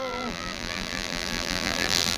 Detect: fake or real fake